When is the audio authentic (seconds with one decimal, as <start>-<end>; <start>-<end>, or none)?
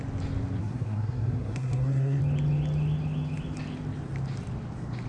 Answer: 0.0-0.6; 2.2-5.1